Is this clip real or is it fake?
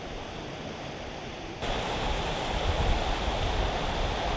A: real